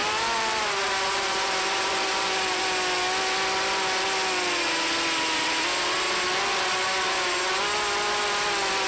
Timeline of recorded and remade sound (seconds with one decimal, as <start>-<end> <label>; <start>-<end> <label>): 0.0-2.6 remade; 2.6-8.9 recorded